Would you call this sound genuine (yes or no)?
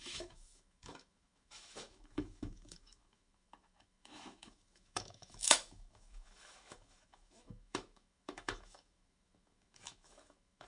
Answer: no